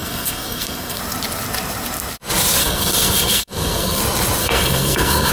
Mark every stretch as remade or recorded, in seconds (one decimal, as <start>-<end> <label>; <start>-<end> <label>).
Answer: 0.0-1.0 remade; 1.0-2.6 recorded; 2.6-4.0 remade; 4.0-4.4 recorded; 4.4-5.3 remade